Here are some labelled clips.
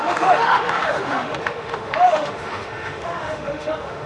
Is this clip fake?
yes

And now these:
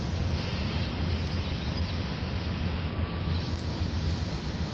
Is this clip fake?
no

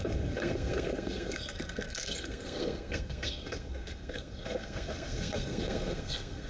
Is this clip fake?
yes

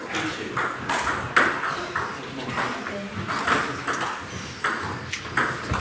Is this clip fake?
no